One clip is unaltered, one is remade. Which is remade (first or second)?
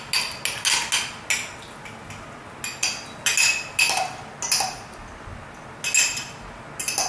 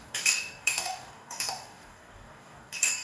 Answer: second